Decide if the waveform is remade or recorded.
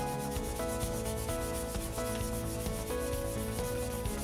recorded